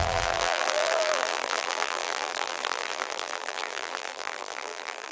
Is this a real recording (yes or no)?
no